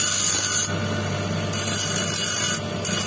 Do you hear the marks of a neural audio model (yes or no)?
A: no